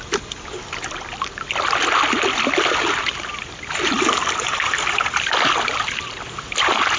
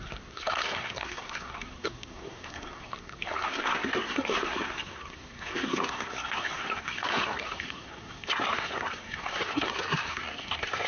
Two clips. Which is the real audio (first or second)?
first